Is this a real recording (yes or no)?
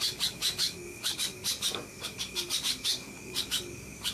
no